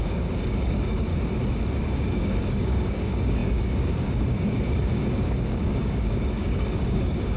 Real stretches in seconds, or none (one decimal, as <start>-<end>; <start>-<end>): 1.1-1.8